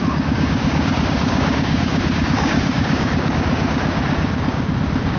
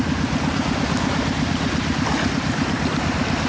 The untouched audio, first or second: second